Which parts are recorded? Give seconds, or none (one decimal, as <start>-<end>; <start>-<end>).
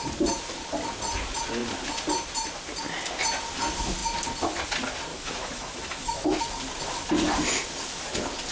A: 0.0-5.1; 6.4-8.5